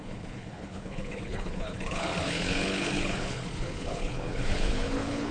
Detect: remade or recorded remade